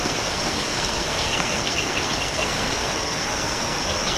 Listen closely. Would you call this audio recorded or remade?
remade